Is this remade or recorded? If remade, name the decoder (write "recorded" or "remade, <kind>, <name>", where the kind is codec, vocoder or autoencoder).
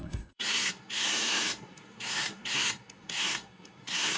remade, codec, SNAC